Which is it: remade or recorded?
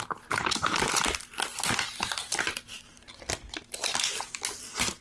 recorded